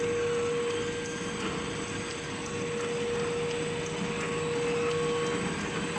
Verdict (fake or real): real